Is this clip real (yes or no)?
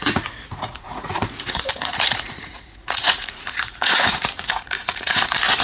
no